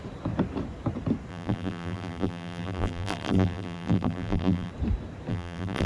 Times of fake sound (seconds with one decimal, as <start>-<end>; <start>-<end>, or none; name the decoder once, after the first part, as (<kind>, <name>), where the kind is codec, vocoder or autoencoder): 1.3-4.7 (vocoder, BigVGAN v2); 5.3-5.9